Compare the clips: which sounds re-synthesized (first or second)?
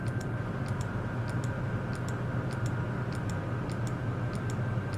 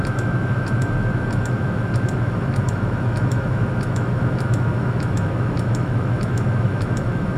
second